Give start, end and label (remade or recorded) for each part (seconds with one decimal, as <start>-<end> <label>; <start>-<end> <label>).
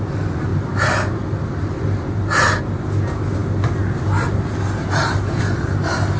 0.0-0.5 recorded; 0.5-2.6 remade; 2.6-6.2 recorded